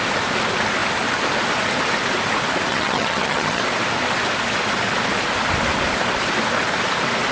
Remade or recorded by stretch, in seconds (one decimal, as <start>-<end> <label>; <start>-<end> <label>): 0.0-2.7 recorded; 2.7-3.6 remade; 3.6-7.3 recorded